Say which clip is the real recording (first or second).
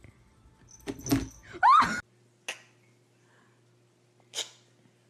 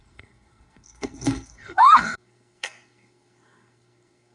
first